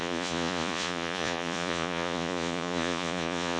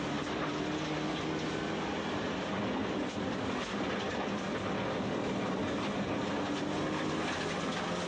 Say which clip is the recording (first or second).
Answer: second